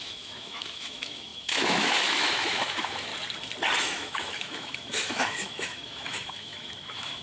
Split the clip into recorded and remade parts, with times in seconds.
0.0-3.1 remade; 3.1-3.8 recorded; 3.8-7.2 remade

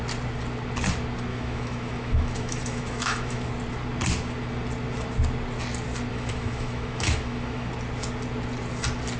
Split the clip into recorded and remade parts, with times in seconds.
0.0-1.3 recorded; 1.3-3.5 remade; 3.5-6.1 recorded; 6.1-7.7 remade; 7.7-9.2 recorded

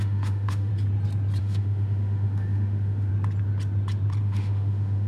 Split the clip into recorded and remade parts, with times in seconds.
0.0-0.7 remade; 0.7-1.4 recorded; 1.4-3.1 remade; 3.1-4.2 recorded; 4.2-5.1 remade

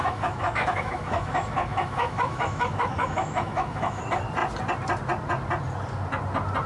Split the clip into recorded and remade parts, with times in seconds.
0.0-4.0 remade; 4.0-6.7 recorded